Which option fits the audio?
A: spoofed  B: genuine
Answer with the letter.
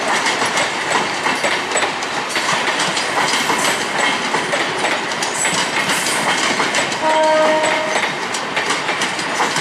B